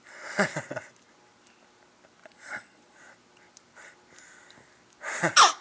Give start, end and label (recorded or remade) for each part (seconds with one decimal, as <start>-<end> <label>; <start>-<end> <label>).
0.0-2.2 recorded; 2.2-3.0 remade; 3.0-5.6 recorded